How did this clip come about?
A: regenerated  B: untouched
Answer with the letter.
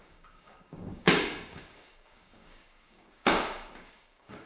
A